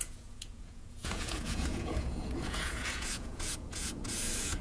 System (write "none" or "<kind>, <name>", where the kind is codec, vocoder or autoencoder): vocoder, Vocos